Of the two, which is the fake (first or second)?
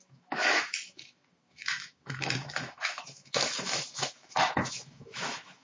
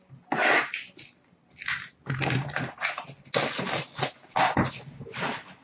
first